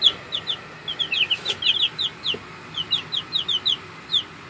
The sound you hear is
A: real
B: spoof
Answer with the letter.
A